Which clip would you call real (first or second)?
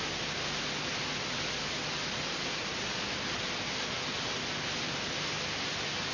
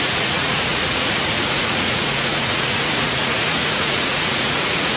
first